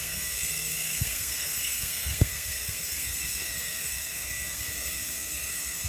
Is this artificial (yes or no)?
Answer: yes